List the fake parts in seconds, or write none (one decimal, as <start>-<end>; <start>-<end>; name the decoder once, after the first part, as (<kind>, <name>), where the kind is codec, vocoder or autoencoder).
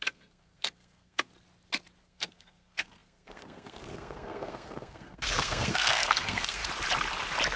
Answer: 0.0-1.3 (codec, SNAC); 2.0-6.6